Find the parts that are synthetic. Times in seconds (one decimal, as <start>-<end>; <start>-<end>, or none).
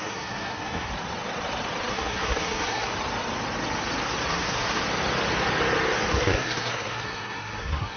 0.0-0.9; 1.9-2.9; 4.3-4.8; 6.1-8.0